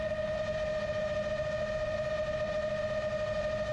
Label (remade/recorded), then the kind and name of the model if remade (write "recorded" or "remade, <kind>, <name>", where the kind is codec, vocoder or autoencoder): recorded